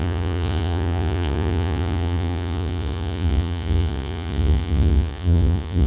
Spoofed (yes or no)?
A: yes